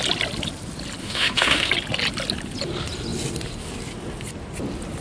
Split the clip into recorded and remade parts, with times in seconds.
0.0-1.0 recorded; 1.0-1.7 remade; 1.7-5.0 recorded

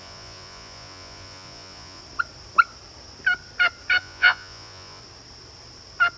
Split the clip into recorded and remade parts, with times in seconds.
0.0-2.0 remade; 2.0-4.0 recorded; 4.0-5.0 remade; 5.0-6.2 recorded

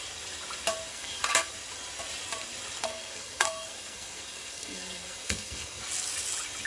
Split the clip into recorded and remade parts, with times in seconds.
0.0-0.9 recorded; 0.9-1.5 remade; 1.5-2.8 recorded; 2.8-5.8 remade; 5.8-6.7 recorded

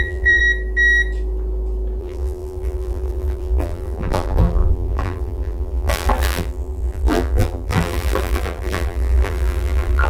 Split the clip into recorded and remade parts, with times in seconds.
0.0-0.4 remade; 0.4-2.0 recorded; 2.0-10.1 remade